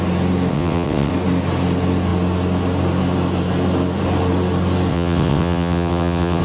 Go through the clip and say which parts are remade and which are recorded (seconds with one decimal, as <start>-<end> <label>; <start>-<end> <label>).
0.0-0.5 recorded; 0.5-1.1 remade; 1.1-4.9 recorded; 4.9-6.4 remade